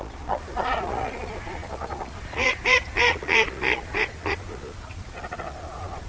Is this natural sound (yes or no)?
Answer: no